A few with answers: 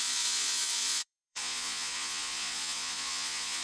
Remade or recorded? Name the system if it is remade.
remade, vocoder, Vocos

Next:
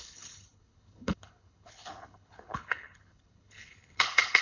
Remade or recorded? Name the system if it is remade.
remade, codec, HILCodec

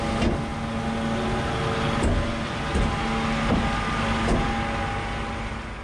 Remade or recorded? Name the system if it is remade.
recorded